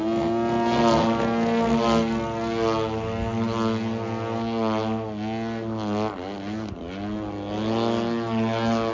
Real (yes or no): yes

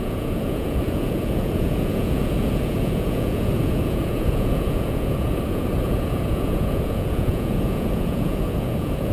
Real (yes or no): no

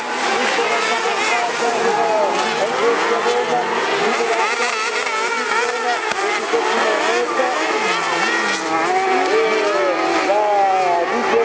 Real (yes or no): yes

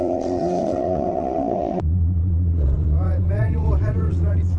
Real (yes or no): no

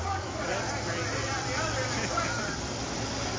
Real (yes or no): yes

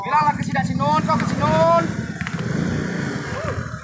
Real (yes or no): yes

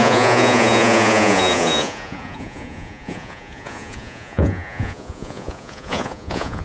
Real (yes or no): no